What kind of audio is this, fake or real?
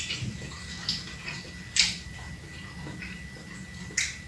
real